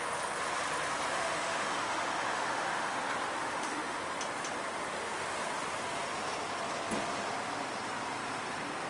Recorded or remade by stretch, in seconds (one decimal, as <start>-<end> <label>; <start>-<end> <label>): 0.0-1.1 recorded; 1.1-3.0 remade; 3.0-3.4 recorded; 3.4-4.0 remade; 4.0-8.9 recorded